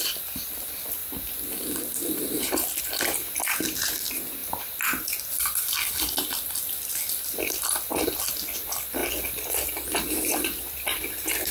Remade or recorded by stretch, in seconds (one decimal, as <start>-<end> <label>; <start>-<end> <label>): 0.0-1.0 recorded; 1.0-2.8 remade; 2.8-9.0 recorded; 9.0-11.5 remade